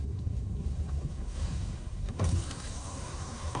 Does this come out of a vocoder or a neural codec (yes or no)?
yes